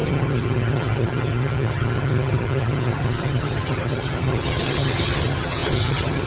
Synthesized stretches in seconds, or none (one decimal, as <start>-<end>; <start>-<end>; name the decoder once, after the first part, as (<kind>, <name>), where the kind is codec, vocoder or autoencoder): 0.0-6.3 (vocoder, HiFi-GAN)